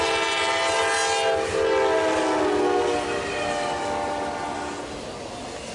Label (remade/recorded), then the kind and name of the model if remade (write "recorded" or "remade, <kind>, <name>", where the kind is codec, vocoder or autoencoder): recorded